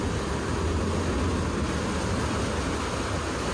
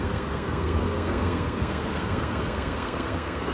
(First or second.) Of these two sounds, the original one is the first